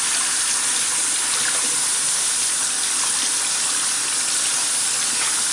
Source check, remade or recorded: recorded